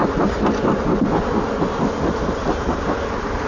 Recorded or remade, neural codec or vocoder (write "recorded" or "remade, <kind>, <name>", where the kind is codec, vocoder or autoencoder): recorded